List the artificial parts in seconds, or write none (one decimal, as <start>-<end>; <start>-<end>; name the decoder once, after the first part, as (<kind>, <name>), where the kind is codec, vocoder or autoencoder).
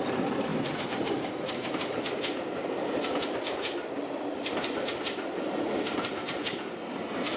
none